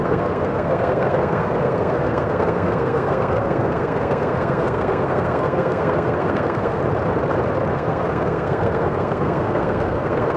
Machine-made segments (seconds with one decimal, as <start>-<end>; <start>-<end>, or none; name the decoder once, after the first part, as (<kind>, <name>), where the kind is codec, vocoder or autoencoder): 0.0-6.8 (codec, SNAC); 7.7-10.4